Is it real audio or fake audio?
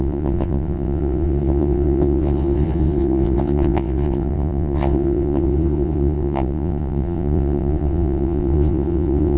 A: fake